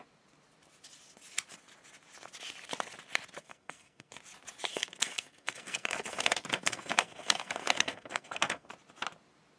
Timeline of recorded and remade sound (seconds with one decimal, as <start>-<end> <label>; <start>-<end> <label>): 0.0-3.4 recorded; 3.4-4.1 remade; 4.1-4.7 recorded; 4.7-8.7 remade; 8.7-9.6 recorded